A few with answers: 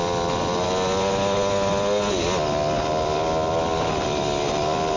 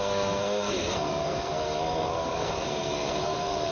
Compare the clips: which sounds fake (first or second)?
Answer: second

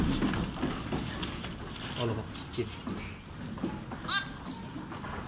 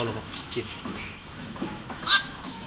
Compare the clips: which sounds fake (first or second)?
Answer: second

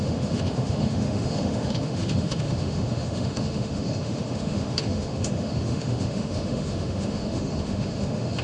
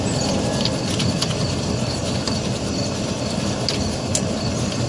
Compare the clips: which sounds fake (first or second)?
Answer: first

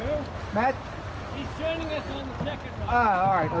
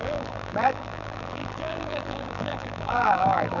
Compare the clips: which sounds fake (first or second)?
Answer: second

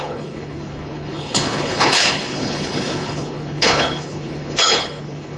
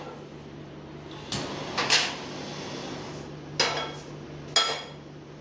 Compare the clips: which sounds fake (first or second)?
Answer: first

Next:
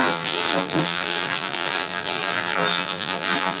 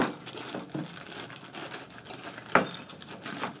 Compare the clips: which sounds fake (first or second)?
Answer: first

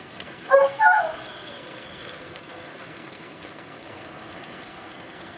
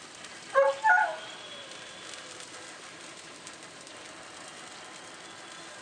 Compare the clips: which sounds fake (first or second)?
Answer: first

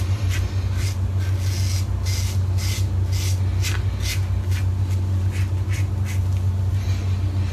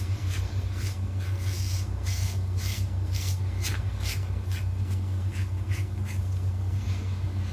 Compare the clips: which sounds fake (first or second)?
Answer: second